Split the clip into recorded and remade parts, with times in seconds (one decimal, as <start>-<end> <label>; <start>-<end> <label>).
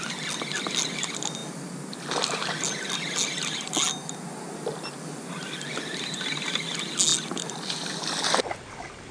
0.0-9.1 recorded